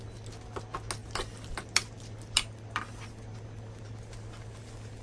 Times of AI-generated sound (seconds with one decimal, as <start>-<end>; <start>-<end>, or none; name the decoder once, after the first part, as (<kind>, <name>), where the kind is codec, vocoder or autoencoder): 1.0-4.0 (vocoder, BigVGAN v2)